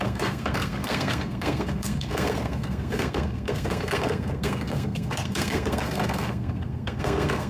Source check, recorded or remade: remade